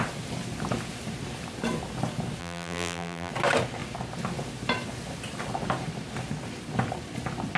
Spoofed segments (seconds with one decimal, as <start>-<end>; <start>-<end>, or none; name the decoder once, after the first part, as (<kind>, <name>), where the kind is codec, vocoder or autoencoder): 2.4-3.3 (vocoder, BigVGAN v2)